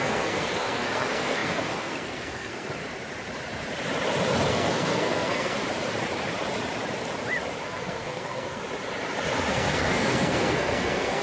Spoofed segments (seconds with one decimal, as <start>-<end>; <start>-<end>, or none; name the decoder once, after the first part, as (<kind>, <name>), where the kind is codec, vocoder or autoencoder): 0.0-2.8 (codec, SNAC); 4.5-5.6; 7.6-8.6; 9.5-11.2